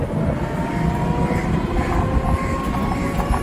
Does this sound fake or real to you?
real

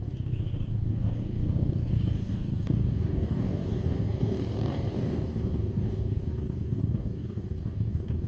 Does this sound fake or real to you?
fake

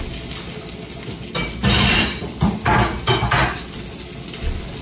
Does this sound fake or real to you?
real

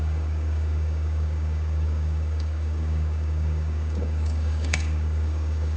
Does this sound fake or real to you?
fake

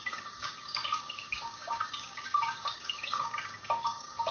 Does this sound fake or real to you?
fake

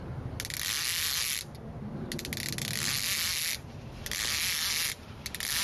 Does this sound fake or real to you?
real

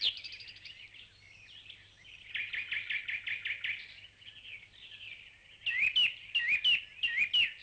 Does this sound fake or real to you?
real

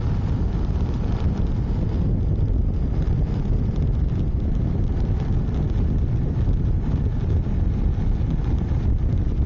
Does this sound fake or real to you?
real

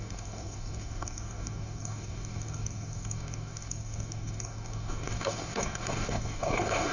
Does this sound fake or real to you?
fake